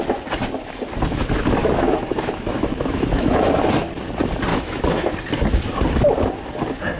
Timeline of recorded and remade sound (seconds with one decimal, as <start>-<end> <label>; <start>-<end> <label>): 0.0-1.6 recorded; 1.6-3.5 remade; 3.5-4.5 recorded; 4.5-5.1 remade; 5.1-7.0 recorded